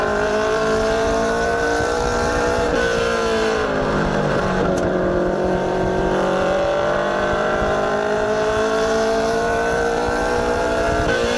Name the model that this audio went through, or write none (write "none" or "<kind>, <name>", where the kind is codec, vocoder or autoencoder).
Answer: vocoder, BigVGAN v2